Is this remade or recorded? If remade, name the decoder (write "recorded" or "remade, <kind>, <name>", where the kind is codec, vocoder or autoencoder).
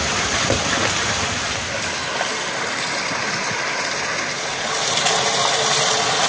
recorded